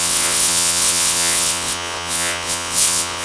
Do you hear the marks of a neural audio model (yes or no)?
yes